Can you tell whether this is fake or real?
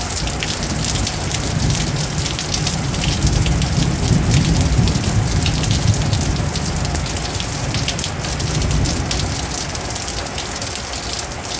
real